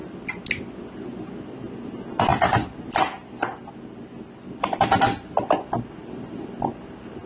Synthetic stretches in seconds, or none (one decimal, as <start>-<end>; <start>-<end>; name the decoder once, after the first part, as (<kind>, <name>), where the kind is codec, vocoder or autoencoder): none